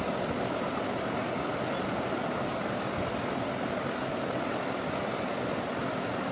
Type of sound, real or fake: real